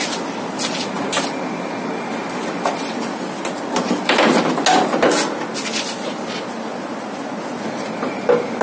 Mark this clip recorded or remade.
recorded